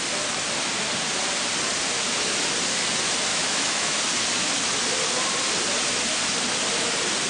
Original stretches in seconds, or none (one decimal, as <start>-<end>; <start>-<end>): 0.0-3.3; 4.0-7.3